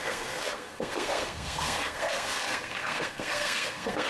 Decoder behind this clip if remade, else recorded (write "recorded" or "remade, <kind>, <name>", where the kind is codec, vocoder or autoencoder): remade, codec, SNAC